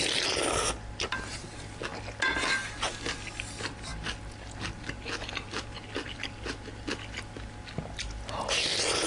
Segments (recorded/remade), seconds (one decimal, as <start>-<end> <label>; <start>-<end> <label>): 0.0-9.1 recorded